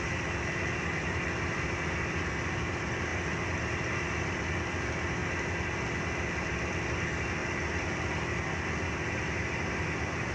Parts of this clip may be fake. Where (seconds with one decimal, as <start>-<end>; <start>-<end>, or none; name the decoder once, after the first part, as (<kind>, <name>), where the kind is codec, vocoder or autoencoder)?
none